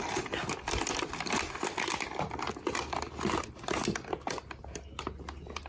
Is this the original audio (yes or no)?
yes